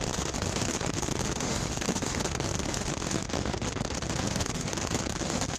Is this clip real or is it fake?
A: fake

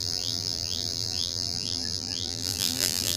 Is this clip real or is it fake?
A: fake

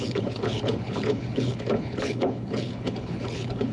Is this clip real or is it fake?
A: fake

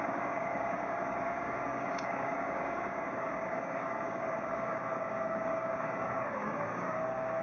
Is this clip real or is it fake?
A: fake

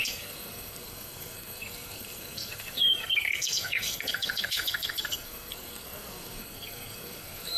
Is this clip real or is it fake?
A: fake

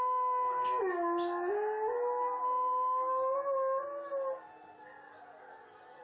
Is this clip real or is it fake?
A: real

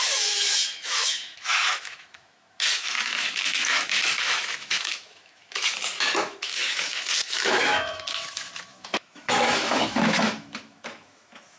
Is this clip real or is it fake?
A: fake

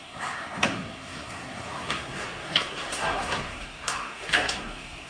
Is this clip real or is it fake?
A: fake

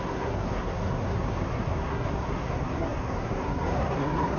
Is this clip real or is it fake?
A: fake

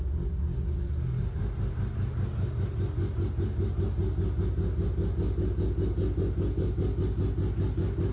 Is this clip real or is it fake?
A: real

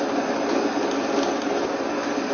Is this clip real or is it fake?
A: real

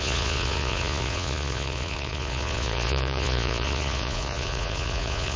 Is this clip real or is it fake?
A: fake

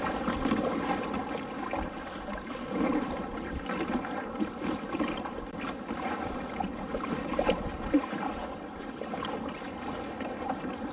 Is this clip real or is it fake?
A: fake